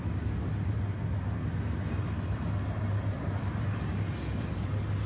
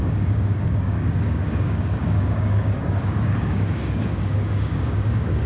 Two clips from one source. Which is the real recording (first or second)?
first